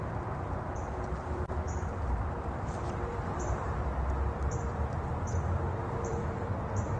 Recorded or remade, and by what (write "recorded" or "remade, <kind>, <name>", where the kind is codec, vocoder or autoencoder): remade, vocoder, BigVGAN v2